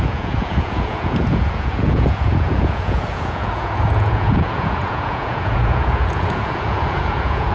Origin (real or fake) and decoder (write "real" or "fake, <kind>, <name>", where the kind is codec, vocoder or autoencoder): fake, vocoder, Vocos